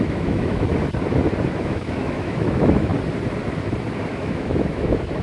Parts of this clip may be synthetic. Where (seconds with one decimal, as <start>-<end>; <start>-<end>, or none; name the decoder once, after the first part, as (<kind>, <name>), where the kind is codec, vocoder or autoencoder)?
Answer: 0.0-0.7 (autoencoder, DAC-VAE); 1.5-2.9; 4.1-5.2